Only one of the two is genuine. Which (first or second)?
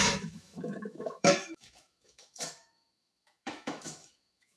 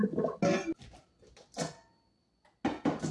second